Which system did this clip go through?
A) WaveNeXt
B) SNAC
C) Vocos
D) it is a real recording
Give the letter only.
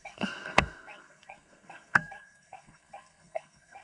B